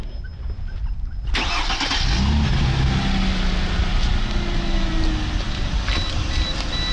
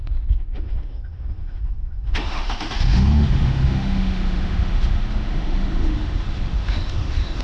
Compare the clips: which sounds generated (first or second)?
second